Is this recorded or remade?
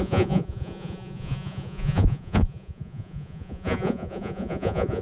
remade